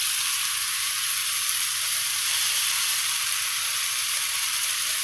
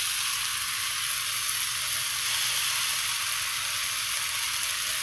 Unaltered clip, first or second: second